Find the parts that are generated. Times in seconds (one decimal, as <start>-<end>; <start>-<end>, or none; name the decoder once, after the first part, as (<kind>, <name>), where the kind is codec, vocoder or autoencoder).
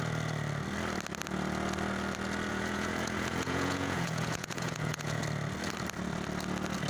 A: 2.5-5.2 (vocoder, Vocos)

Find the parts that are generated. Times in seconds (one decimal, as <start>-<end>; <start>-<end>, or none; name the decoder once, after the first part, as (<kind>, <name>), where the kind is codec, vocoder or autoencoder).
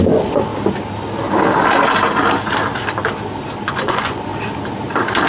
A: 0.0-0.5 (vocoder, Vocos); 3.7-4.3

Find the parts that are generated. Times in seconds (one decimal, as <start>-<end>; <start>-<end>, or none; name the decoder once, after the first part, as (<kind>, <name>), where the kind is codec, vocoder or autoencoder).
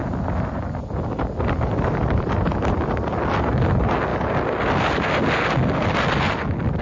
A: none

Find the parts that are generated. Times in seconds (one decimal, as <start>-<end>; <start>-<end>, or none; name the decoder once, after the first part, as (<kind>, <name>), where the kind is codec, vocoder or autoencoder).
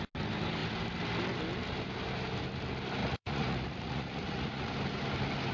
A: 3.0-4.7 (vocoder, Vocos)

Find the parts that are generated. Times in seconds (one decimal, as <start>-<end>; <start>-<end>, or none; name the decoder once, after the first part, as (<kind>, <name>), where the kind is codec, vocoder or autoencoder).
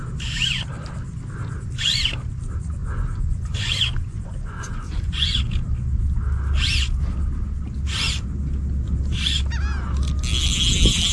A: 2.8-5.4 (vocoder, Vocos)